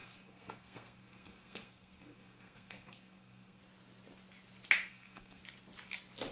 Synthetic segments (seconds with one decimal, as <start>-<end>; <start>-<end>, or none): 0.0-3.6; 4.9-5.4